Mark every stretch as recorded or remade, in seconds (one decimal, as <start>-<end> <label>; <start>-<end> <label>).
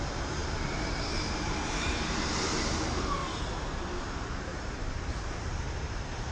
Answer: 0.0-3.2 remade; 3.2-4.0 recorded; 4.0-6.3 remade